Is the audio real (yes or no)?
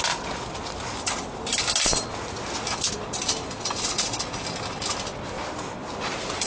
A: yes